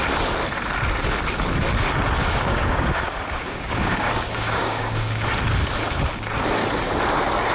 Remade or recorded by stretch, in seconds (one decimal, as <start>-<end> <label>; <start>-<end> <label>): 0.0-2.2 recorded; 2.2-5.3 remade; 5.3-7.5 recorded